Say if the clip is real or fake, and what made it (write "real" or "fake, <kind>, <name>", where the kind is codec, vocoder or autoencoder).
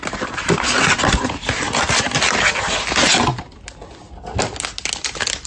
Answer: real